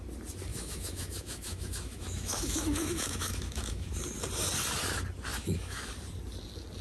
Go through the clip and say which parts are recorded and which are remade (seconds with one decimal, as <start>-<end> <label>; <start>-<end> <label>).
0.0-0.5 recorded; 0.5-4.0 remade; 4.0-5.3 recorded; 5.3-5.9 remade; 5.9-6.8 recorded

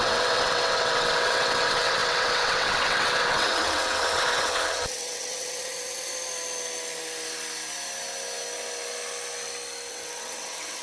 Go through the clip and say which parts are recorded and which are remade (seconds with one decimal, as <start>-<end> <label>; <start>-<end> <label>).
0.0-6.1 remade; 6.1-9.9 recorded; 9.9-10.8 remade

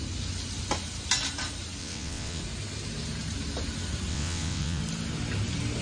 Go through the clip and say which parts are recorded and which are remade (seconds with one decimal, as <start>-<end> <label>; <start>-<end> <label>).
0.0-1.8 recorded; 1.8-2.4 remade; 2.4-4.1 recorded; 4.1-4.8 remade; 4.8-5.8 recorded

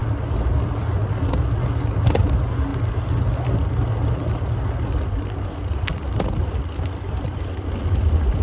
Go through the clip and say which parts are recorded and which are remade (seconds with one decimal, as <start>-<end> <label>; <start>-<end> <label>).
0.0-8.4 recorded